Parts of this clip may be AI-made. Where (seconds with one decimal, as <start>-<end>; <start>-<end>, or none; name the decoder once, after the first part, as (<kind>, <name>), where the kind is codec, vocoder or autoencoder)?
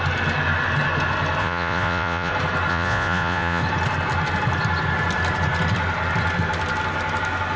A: 1.4-2.3 (vocoder, Vocos); 2.7-3.6